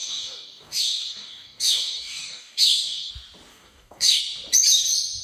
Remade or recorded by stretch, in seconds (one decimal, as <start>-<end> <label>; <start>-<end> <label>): 0.0-3.1 remade; 3.1-3.5 recorded; 3.5-4.2 remade; 4.2-5.2 recorded